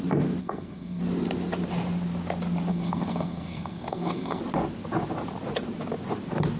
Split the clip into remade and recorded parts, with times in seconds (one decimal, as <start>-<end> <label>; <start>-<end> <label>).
0.0-0.4 recorded; 0.4-1.0 remade; 1.0-2.7 recorded; 2.7-4.4 remade; 4.4-6.6 recorded